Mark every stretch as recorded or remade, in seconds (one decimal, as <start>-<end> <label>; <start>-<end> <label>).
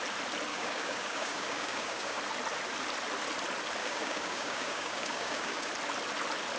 0.0-0.5 recorded; 0.5-2.2 remade; 2.2-3.8 recorded; 3.8-5.7 remade; 5.7-6.6 recorded